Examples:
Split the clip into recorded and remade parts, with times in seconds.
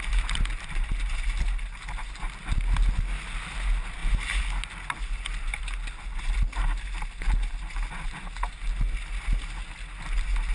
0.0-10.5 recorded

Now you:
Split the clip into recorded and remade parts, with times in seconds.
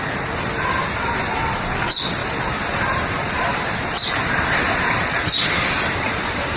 0.0-6.6 recorded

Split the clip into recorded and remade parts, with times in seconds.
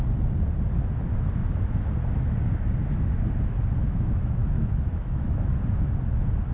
0.0-3.8 recorded; 3.8-5.5 remade; 5.5-6.5 recorded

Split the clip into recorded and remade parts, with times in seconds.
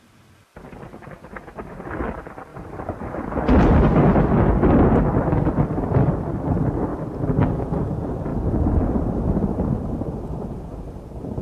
0.0-8.3 recorded; 8.3-9.9 remade; 9.9-11.4 recorded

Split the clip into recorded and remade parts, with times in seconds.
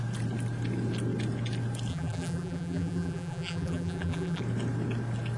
0.0-1.9 recorded; 1.9-4.4 remade; 4.4-5.4 recorded